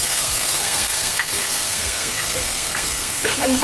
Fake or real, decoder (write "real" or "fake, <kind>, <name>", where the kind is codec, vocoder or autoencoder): fake, codec, SNAC